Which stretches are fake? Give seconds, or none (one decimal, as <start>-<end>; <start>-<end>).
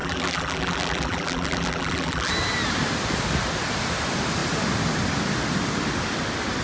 0.0-2.3